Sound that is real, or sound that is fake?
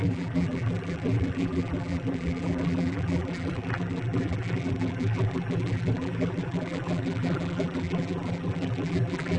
fake